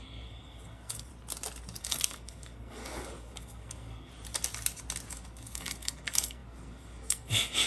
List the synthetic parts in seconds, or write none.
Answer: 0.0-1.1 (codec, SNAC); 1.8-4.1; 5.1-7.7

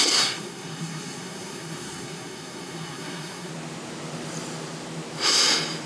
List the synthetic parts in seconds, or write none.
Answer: 0.0-3.5 (codec, SNAC)

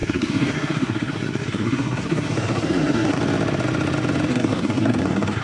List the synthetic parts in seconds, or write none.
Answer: 0.0-3.2 (codec, SNAC); 4.3-5.4